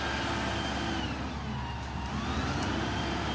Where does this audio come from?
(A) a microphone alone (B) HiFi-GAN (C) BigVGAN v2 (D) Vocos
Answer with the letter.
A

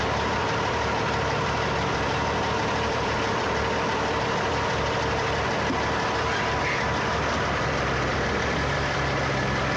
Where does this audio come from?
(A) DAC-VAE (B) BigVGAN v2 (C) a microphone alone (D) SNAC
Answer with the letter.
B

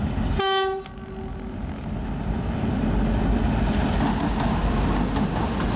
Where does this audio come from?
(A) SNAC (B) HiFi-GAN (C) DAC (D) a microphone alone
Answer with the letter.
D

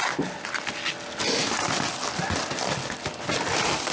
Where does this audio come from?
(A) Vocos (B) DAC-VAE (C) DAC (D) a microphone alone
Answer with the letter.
D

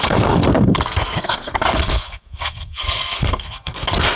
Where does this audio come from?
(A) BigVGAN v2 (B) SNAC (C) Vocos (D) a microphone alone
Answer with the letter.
B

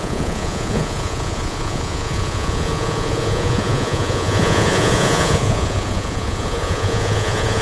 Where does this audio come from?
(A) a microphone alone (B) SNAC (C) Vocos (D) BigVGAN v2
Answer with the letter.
C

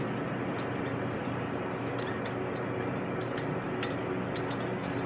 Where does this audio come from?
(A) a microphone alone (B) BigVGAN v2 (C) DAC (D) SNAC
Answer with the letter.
A